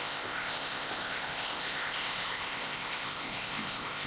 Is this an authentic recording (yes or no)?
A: no